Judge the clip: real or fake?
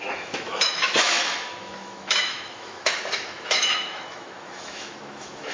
fake